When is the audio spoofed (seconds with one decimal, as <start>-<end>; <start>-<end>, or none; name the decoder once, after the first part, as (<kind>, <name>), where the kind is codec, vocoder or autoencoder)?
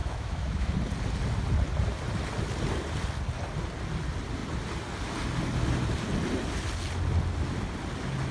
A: 0.0-0.7 (autoencoder, DAC-VAE)